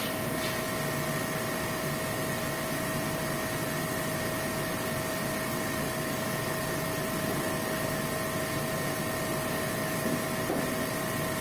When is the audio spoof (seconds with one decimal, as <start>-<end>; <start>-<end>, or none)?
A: none